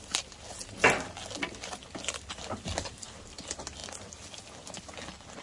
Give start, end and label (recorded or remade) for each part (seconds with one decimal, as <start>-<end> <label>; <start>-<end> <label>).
0.0-5.4 recorded